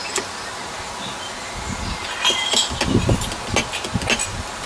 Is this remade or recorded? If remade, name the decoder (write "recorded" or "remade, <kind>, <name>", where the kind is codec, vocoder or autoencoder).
recorded